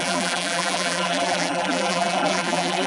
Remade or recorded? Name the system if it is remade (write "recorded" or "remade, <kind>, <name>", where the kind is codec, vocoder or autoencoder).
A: remade, vocoder, BigVGAN v2